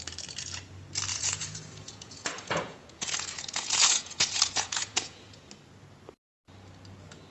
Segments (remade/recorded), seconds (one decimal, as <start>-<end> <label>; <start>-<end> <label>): 0.0-1.1 recorded; 1.1-5.5 remade; 5.5-7.3 recorded